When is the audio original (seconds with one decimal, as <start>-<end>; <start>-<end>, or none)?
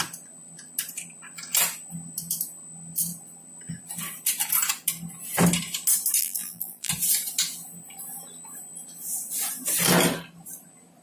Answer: 0.0-6.2; 6.9-11.0